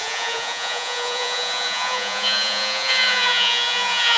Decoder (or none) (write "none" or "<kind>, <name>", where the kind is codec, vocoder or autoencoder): vocoder, Vocos